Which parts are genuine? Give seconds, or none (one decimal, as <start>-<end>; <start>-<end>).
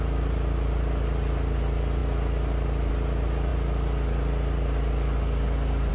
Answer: 0.0-5.9